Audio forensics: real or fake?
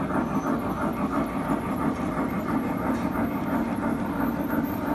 real